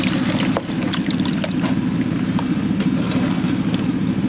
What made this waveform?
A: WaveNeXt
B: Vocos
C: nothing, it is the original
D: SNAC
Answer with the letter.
C